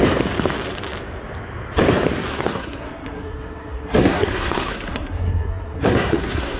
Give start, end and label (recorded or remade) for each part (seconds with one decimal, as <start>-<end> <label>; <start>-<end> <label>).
0.0-2.3 recorded; 2.3-6.6 remade